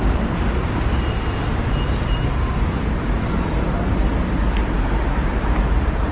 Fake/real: fake